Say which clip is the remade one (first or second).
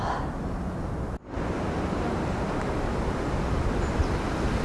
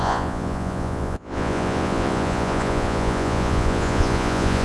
second